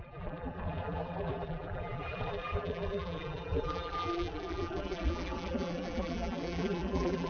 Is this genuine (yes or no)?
no